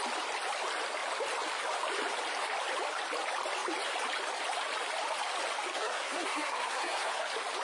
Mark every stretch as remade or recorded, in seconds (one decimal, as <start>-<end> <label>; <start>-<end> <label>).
0.0-5.7 recorded; 5.7-7.1 remade; 7.1-7.6 recorded